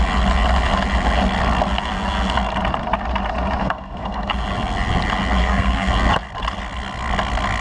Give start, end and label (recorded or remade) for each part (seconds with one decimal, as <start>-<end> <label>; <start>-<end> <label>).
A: 0.0-3.6 recorded; 3.6-4.3 remade; 4.3-5.4 recorded; 5.4-5.9 remade; 5.9-7.6 recorded